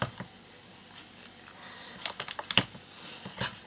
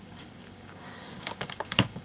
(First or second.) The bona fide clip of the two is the first